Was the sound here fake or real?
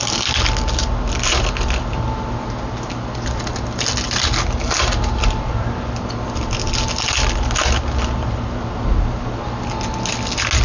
real